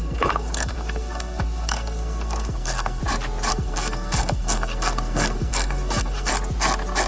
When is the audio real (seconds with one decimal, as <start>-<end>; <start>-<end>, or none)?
3.0-3.5; 6.3-7.1